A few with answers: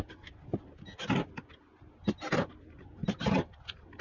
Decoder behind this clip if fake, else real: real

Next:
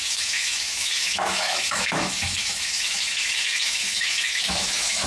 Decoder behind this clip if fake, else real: fake, autoencoder, DAC-VAE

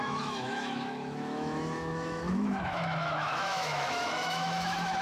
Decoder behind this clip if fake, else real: fake, autoencoder, DAC-VAE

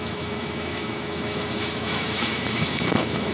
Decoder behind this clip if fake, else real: fake, autoencoder, DAC-VAE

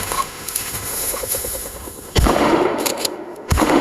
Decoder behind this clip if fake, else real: fake, autoencoder, DAC-VAE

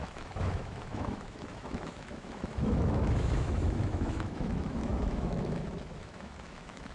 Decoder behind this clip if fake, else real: fake, autoencoder, DAC-VAE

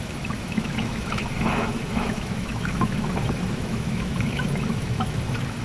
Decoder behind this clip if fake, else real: fake, autoencoder, DAC-VAE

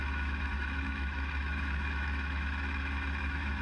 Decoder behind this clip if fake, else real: fake, autoencoder, DAC-VAE